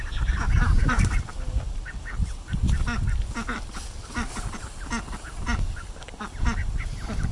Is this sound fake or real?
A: real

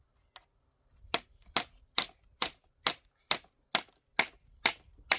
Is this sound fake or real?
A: real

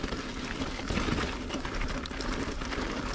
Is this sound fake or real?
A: real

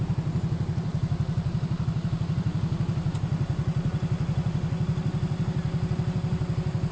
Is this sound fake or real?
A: real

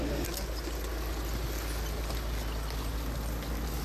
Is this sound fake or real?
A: real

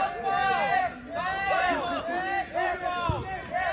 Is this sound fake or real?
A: real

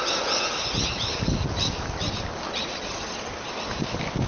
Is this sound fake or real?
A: real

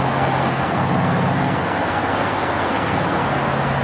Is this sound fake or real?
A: fake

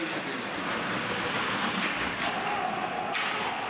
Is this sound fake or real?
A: real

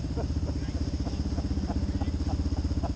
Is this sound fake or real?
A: real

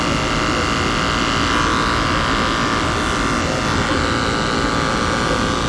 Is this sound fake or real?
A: real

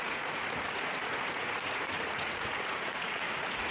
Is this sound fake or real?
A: fake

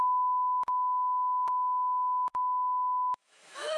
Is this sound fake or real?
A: fake